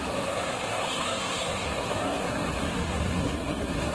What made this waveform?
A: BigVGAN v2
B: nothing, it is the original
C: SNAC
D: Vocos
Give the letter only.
C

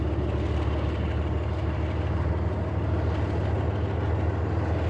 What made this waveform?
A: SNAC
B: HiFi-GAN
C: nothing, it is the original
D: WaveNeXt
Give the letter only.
C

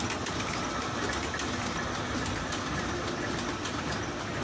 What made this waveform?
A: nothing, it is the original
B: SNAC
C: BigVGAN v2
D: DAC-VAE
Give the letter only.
A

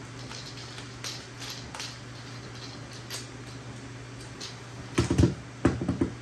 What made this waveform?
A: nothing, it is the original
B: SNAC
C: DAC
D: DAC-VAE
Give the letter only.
A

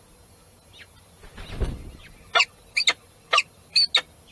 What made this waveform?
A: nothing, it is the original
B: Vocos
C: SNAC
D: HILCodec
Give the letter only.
A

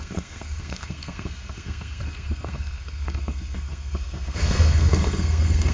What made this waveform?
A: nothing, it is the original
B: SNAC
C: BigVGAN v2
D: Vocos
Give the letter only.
B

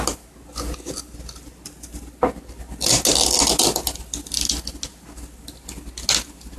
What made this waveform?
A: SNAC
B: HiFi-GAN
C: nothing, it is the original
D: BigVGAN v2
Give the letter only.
C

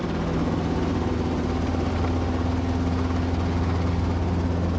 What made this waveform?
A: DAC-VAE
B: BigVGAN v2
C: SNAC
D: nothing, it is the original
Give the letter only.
D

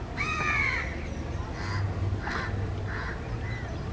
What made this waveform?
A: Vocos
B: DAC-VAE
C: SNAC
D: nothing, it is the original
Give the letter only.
D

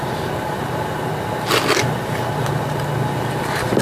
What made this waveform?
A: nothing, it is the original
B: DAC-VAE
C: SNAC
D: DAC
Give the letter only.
A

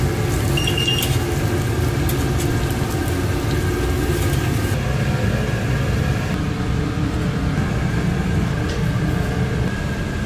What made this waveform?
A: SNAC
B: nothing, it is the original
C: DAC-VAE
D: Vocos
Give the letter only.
B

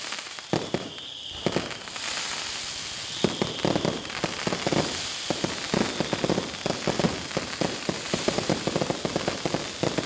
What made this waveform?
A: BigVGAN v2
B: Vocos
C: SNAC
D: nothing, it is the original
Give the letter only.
D